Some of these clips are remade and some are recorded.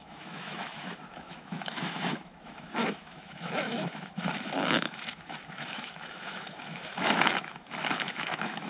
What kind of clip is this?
remade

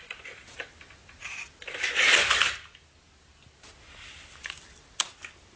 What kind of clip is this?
recorded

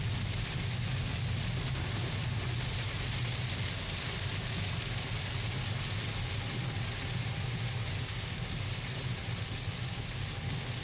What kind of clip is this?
recorded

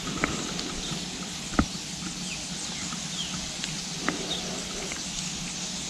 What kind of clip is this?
recorded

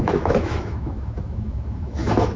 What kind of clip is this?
remade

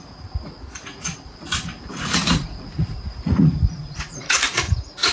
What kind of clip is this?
remade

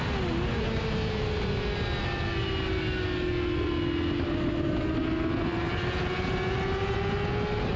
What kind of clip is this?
recorded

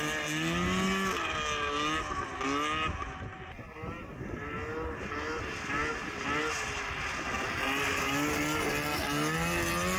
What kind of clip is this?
recorded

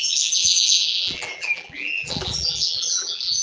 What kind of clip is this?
remade